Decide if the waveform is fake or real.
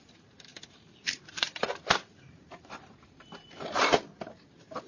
fake